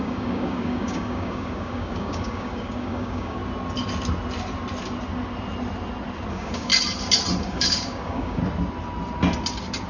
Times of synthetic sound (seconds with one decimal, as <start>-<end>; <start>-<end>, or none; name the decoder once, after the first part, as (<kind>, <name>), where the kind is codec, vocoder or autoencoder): 0.0-3.4 (codec, DAC); 6.3-6.7; 7.4-8.4